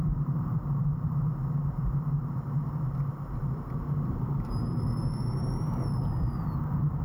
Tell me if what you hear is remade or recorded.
remade